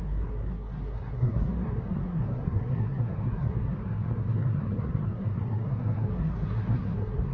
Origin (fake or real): fake